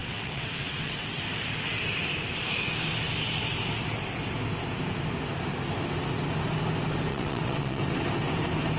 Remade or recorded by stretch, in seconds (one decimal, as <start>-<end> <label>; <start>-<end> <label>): 0.0-1.2 remade; 1.2-7.1 recorded; 7.1-7.8 remade; 7.8-8.8 recorded